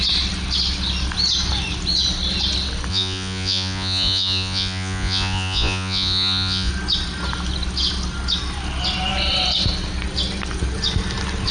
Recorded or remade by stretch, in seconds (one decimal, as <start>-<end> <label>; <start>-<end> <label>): 0.0-2.9 recorded; 2.9-6.7 remade; 6.7-11.5 recorded